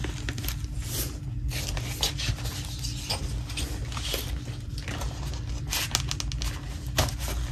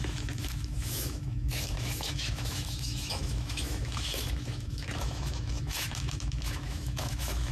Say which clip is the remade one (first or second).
second